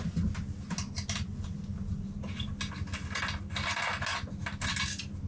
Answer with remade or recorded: recorded